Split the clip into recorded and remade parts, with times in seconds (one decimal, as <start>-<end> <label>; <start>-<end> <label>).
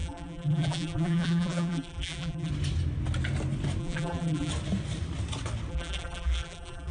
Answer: 0.0-2.5 remade; 2.5-3.8 recorded; 3.8-4.5 remade; 4.5-5.7 recorded; 5.7-6.9 remade